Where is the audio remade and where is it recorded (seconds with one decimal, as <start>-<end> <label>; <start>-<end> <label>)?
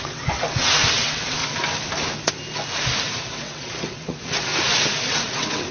0.0-1.4 remade; 1.4-3.2 recorded; 3.2-4.5 remade; 4.5-5.1 recorded; 5.1-5.7 remade